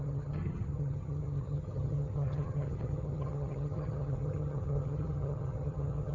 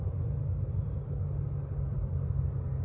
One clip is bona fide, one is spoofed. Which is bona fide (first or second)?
second